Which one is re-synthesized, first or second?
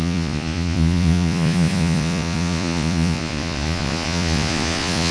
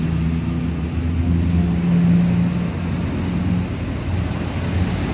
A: first